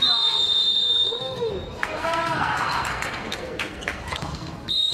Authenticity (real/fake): fake